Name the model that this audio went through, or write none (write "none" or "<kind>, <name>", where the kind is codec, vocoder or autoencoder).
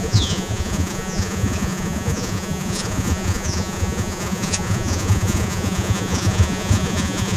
vocoder, Vocos